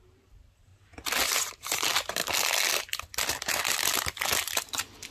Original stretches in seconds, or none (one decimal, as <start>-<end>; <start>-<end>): 0.7-1.5; 2.2-5.1